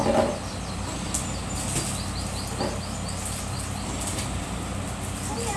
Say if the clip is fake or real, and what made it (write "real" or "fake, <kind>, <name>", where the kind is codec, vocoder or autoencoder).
real